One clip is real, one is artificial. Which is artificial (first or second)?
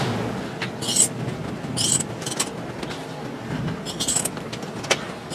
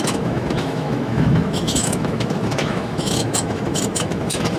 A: second